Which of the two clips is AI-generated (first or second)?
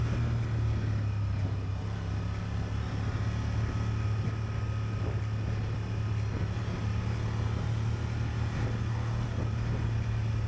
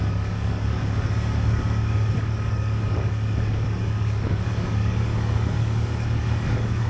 second